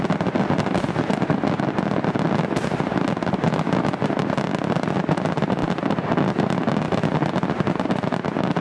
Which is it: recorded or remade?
recorded